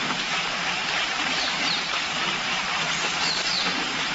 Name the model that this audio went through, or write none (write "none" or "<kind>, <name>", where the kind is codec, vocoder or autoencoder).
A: vocoder, BigVGAN v2